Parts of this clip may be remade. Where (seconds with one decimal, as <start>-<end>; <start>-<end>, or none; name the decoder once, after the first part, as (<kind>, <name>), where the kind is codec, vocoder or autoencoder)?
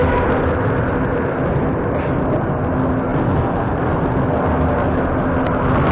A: 1.1-1.8 (vocoder, BigVGAN v2); 3.1-4.2